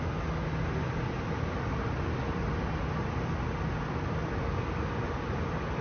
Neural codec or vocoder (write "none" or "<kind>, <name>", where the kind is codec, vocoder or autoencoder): none